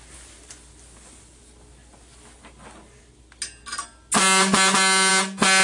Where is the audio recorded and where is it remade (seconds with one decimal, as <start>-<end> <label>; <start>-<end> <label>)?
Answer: 0.0-5.6 recorded